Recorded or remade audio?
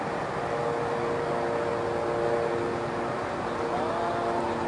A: recorded